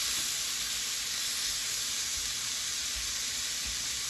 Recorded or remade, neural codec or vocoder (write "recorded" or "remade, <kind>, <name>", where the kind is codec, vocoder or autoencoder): recorded